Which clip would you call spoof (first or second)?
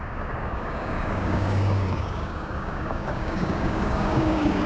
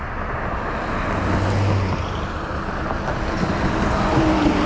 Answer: first